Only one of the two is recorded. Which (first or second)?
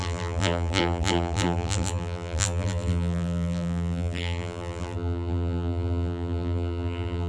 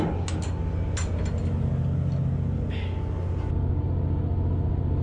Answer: second